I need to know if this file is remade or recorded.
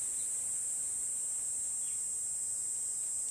recorded